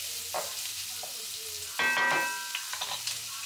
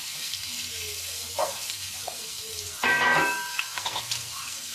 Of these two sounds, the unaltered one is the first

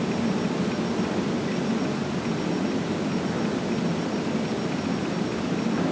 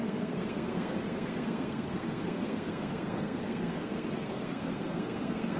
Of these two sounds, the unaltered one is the first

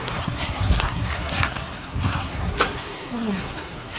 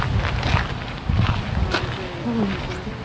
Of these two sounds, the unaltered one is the second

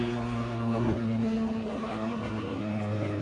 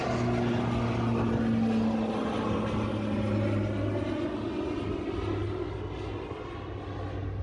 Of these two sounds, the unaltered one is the second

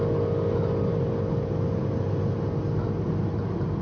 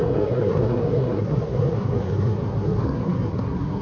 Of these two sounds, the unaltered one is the first